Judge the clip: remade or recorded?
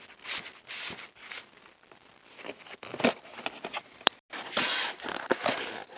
remade